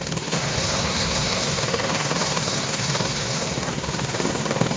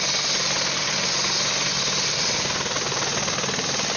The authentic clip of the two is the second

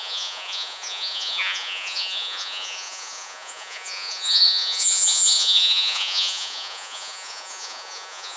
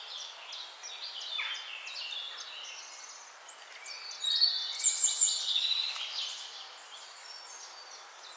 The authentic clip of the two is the second